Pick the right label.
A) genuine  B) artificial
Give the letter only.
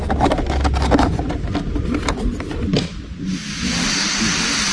A